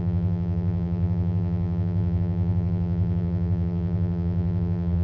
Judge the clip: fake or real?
fake